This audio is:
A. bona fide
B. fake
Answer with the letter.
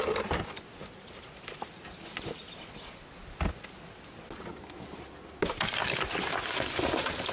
A